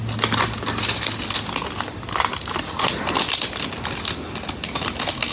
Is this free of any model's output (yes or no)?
yes